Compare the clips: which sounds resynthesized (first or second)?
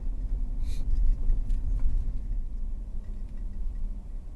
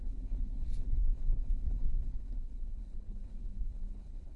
second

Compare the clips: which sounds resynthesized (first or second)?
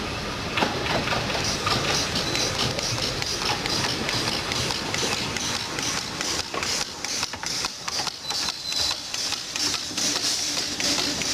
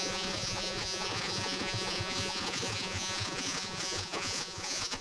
second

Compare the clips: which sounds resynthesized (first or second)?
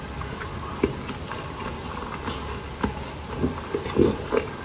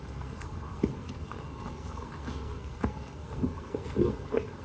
second